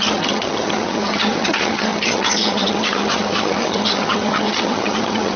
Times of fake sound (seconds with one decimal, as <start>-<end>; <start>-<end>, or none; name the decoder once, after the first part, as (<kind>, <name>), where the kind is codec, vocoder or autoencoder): 0.0-5.4 (vocoder, HiFi-GAN)